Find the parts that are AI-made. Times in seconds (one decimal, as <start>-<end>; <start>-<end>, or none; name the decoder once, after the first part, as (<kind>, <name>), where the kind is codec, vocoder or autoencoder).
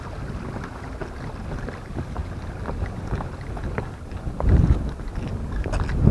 none